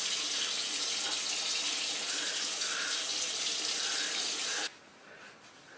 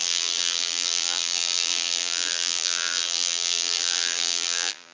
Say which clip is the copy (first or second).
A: second